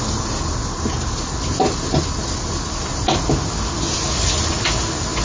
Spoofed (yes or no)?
no